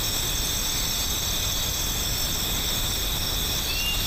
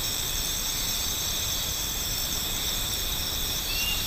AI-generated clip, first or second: second